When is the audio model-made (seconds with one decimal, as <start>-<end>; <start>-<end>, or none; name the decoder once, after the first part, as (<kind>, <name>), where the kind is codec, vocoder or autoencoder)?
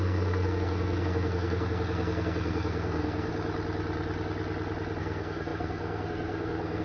0.0-3.3 (codec, SNAC); 5.0-6.8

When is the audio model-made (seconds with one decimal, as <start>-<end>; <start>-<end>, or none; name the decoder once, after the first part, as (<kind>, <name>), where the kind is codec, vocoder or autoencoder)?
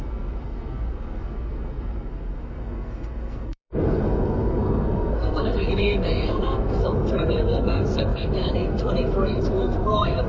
0.0-10.3 (codec, SNAC)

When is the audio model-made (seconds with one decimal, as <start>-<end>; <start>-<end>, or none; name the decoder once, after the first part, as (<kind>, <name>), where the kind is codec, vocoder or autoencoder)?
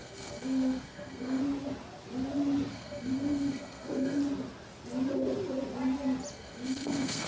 0.0-1.4 (codec, SNAC); 2.7-4.2; 6.3-7.3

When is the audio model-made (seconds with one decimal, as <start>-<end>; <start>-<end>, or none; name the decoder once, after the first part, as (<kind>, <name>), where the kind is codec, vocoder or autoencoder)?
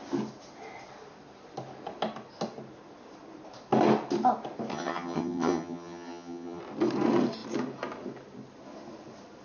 4.7-6.6 (vocoder, HiFi-GAN)